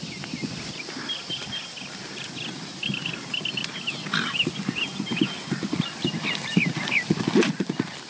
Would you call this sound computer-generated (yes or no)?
no